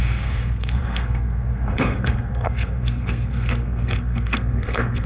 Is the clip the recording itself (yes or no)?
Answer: no